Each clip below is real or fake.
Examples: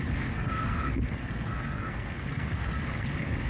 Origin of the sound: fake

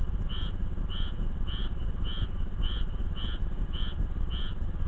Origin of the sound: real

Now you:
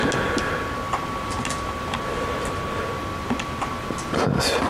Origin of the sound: real